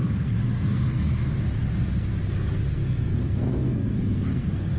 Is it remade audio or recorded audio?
remade